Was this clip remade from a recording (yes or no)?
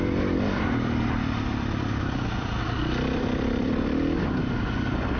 no